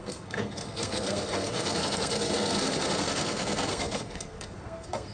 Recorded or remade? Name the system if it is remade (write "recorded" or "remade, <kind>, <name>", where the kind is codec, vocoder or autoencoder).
remade, codec, SNAC